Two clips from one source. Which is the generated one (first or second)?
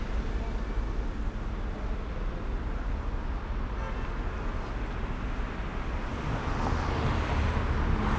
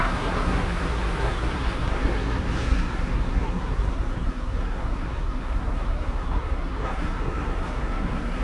second